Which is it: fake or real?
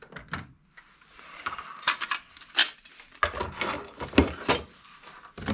real